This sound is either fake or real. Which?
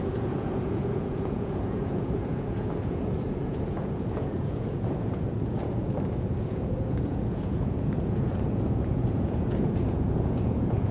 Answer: fake